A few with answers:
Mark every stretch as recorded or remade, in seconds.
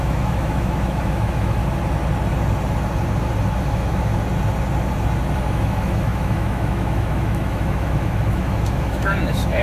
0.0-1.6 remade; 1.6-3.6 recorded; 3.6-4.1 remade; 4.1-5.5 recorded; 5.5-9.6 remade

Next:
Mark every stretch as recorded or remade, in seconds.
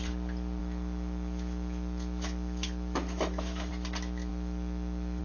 0.0-0.6 recorded; 0.6-3.7 remade; 3.7-4.3 recorded; 4.3-5.2 remade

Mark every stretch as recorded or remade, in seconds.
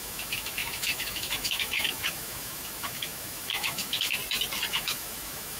0.0-4.2 remade; 4.2-4.7 recorded; 4.7-5.6 remade